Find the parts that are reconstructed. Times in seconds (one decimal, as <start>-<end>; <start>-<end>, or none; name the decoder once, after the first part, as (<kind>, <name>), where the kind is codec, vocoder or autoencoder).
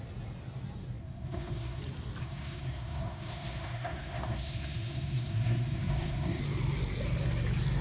1.0-1.8 (codec, SNAC); 2.2-6.4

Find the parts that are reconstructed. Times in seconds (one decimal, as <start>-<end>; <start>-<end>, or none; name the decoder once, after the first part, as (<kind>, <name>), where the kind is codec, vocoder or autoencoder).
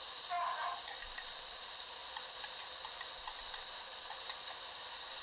none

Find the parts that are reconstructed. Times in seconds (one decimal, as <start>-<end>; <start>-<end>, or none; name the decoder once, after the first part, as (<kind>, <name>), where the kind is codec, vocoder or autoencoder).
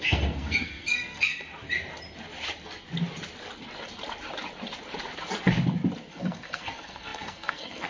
0.0-1.4 (codec, SNAC); 6.1-7.9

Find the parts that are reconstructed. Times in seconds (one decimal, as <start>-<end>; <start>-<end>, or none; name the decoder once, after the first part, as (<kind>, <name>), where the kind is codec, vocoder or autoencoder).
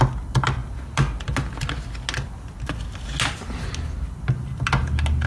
none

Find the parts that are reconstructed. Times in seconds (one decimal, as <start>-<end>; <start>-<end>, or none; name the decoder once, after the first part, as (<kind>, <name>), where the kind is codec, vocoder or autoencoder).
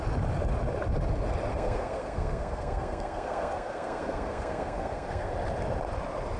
1.5-5.3 (codec, SNAC)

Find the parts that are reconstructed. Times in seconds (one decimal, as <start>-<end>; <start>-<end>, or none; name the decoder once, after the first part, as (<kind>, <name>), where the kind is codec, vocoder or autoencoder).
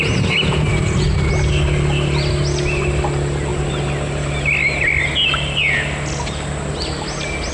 none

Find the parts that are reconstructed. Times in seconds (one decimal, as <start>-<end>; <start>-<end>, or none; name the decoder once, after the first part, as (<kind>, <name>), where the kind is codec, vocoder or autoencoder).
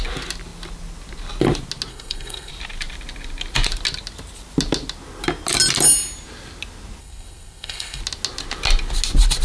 1.9-2.5 (codec, SNAC); 7.0-8.0